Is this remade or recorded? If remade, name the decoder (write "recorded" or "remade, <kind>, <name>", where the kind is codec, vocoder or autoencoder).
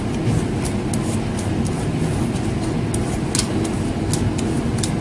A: recorded